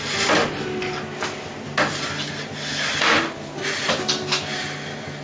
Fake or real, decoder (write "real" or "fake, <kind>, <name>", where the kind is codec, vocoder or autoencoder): real